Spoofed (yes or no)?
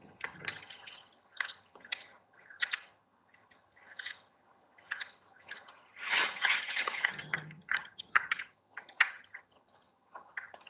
yes